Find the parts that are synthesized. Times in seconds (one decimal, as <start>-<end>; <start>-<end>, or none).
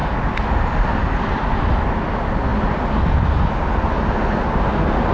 none